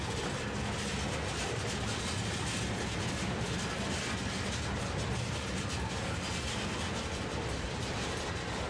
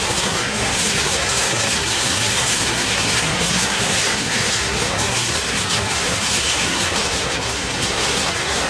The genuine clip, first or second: first